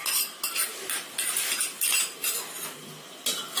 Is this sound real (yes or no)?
yes